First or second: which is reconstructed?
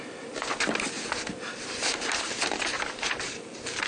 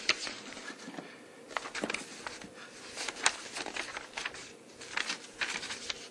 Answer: first